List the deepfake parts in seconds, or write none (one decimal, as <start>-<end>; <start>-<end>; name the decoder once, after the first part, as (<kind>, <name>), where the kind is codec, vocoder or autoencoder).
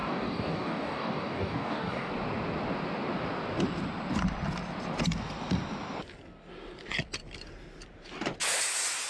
0.0-2.1 (codec, DAC)